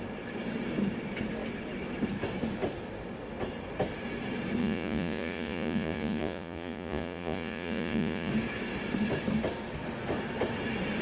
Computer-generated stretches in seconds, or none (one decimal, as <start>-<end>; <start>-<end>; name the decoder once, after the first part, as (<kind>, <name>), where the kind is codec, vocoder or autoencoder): 4.6-8.3 (vocoder, Vocos)